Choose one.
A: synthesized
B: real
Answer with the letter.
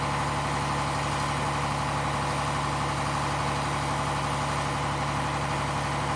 B